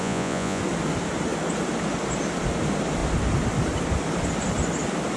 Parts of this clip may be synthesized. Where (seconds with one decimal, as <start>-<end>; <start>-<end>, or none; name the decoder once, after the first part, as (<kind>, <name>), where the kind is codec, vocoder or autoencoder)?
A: 0.0-0.6 (vocoder, Vocos)